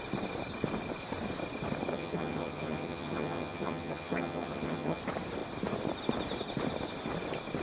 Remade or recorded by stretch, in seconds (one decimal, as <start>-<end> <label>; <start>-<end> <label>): 0.0-1.9 recorded; 1.9-5.0 remade; 5.0-7.6 recorded